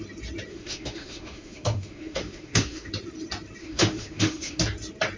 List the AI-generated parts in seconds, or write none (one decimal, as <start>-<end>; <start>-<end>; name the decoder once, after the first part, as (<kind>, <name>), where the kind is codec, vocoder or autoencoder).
0.5-2.9 (autoencoder, DAC-VAE); 3.6-4.6